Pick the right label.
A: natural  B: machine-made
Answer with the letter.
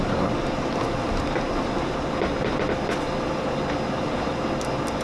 A